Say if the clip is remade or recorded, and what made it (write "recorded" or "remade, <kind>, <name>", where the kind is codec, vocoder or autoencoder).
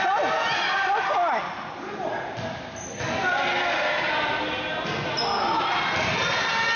recorded